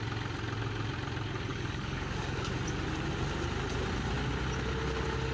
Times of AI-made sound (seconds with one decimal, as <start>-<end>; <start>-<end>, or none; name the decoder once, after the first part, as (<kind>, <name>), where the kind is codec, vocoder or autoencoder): 1.5-2.5 (codec, DAC)